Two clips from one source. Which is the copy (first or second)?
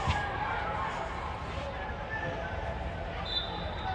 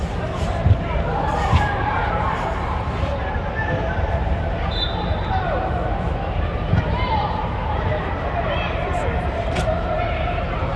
second